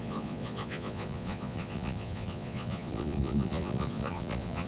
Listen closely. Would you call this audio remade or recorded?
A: remade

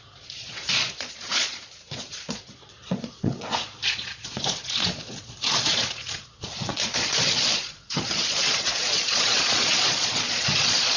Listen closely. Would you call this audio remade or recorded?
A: remade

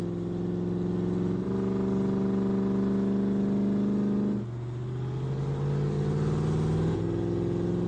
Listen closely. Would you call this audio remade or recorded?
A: recorded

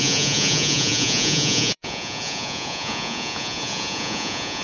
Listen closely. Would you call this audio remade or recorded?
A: remade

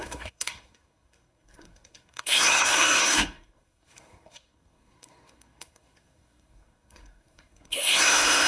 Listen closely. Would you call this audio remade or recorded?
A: remade